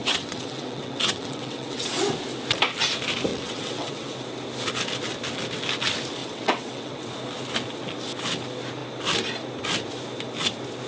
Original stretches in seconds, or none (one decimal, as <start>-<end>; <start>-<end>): 2.0-3.3; 4.1-6.2; 7.1-10.9